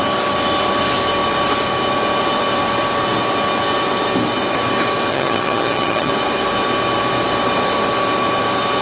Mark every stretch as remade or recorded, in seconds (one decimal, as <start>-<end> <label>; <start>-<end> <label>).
0.0-5.1 recorded; 5.1-6.1 remade; 6.1-8.8 recorded